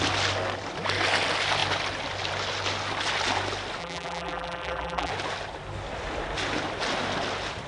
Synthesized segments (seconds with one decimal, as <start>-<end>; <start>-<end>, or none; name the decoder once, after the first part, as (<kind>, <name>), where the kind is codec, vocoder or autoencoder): 3.8-5.1 (vocoder, BigVGAN v2)